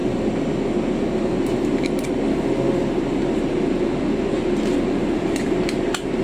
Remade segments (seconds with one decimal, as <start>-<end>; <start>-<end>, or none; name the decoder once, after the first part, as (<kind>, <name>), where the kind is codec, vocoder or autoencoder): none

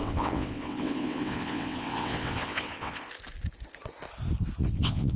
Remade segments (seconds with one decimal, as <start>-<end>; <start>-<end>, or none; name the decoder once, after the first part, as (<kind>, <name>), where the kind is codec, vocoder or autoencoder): 0.0-3.1 (vocoder, WaveNeXt); 4.6-5.2

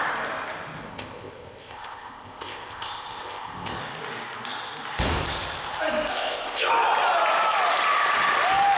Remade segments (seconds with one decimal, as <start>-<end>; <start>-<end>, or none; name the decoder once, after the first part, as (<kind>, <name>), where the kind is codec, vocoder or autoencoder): 0.9-3.8 (codec, ZipCodec); 6.1-6.7

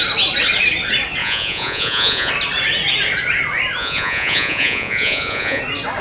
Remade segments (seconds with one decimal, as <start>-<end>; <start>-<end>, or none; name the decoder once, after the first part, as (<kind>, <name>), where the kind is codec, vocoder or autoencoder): 1.2-2.3 (vocoder, Vocos); 3.8-5.6